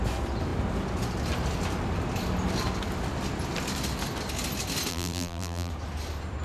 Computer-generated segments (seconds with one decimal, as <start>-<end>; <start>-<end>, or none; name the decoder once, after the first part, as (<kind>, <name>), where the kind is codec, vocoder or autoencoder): 4.9-5.7 (vocoder, BigVGAN v2)